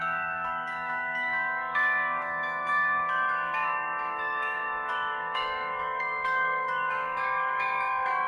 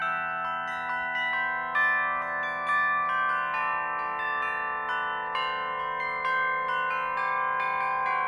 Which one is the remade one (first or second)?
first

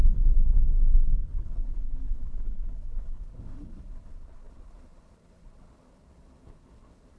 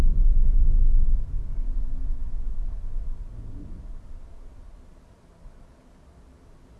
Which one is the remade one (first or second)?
first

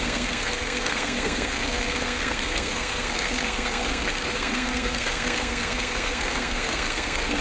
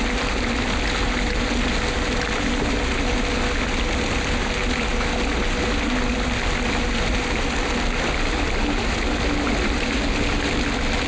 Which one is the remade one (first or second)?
first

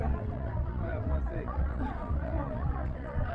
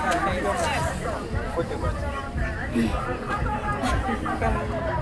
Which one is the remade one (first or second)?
first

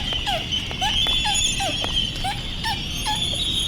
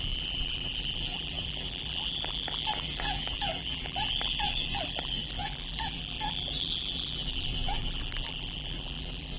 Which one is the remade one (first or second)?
second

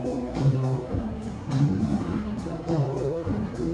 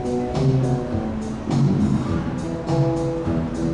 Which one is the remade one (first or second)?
first